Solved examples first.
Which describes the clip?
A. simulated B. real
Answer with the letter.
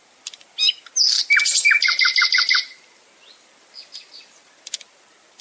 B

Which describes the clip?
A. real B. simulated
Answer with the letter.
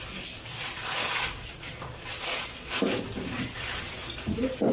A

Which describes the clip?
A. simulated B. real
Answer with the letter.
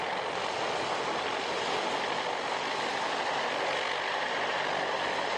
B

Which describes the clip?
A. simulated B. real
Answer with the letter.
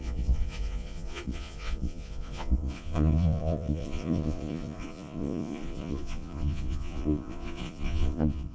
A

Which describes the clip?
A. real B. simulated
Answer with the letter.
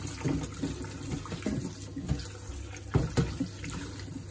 A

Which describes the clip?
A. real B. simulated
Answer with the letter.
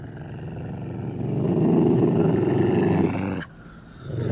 A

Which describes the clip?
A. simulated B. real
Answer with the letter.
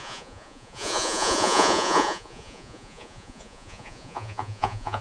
A